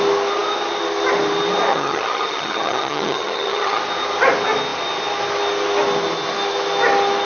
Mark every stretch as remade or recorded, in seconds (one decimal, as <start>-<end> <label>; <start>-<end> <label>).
0.0-1.7 recorded; 1.7-3.8 remade; 3.8-7.3 recorded